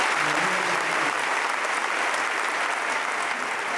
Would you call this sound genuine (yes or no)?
yes